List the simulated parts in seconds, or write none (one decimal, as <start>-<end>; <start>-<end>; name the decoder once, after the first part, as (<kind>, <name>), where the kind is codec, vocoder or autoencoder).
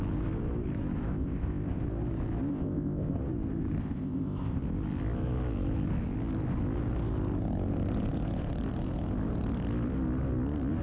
1.1-1.8 (codec, ZipCodec); 2.5-3.2; 3.8-4.6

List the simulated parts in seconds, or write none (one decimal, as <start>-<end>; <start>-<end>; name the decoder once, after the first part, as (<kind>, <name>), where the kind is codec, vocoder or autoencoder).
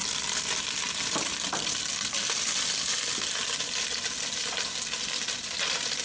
none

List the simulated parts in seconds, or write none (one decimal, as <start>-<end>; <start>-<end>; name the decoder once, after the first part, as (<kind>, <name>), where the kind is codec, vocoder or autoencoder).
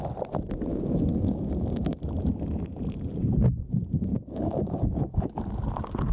0.7-2.0 (codec, DAC); 4.1-5.4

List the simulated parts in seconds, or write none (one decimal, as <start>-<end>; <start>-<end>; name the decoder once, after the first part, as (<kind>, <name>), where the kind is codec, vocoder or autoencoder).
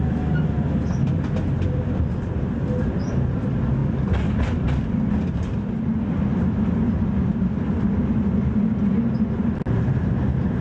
none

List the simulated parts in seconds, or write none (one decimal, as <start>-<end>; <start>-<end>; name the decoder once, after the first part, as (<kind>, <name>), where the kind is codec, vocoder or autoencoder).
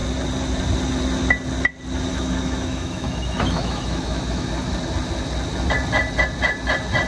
2.1-4.5 (autoencoder, DAC-VAE)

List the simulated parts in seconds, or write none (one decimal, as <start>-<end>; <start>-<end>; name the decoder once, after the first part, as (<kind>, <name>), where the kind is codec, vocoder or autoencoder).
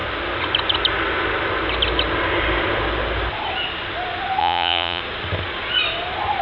4.4-5.0 (vocoder, Vocos)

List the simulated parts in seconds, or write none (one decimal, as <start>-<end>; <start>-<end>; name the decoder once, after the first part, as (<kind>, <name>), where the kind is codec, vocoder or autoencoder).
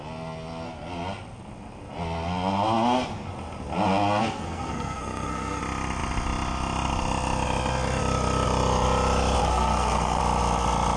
4.2-5.6 (codec, SNAC); 9.4-10.2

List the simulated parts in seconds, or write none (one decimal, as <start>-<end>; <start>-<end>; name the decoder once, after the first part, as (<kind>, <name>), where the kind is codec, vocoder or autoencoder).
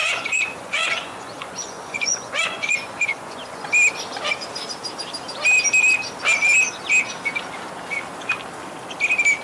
0.0-3.7 (vocoder, Vocos)